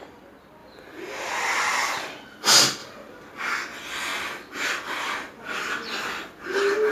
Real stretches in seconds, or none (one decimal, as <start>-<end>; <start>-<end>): 0.0-0.6; 1.3-2.8; 3.4-6.9